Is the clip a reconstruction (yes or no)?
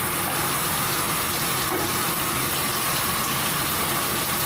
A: no